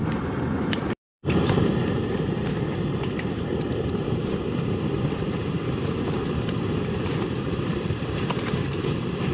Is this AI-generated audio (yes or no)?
yes